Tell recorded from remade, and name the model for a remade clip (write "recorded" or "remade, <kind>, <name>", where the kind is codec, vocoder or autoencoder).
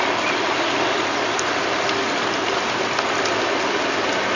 recorded